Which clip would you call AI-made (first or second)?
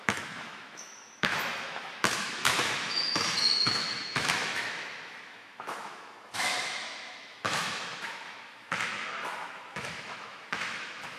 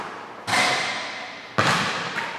first